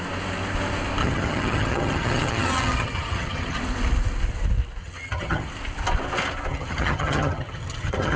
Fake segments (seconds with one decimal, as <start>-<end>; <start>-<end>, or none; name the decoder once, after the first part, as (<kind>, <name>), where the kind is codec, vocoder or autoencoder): 1.0-3.6 (vocoder, HiFi-GAN); 4.8-5.5; 6.5-8.2